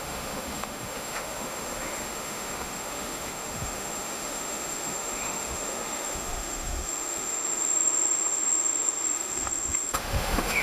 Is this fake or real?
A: fake